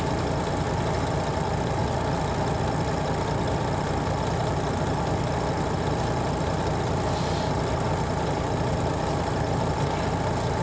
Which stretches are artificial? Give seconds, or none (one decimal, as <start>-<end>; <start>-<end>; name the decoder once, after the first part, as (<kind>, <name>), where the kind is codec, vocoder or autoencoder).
1.8-3.8 (vocoder, BigVGAN v2)